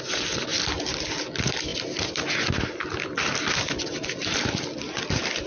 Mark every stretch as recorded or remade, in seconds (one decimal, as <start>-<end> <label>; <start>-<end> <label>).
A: 0.0-5.5 recorded